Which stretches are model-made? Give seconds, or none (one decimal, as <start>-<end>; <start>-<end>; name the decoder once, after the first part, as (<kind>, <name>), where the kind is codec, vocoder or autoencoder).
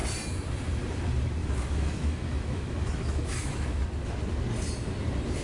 1.4-3.8 (autoencoder, DAC-VAE)